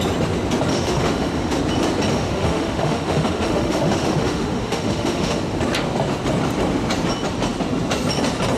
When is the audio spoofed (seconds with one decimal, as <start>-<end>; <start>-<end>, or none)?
0.7-1.6; 2.1-5.4